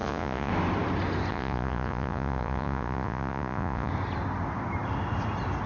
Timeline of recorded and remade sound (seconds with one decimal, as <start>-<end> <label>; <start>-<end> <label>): 0.0-0.5 remade; 0.5-1.3 recorded; 1.3-3.9 remade; 3.9-5.7 recorded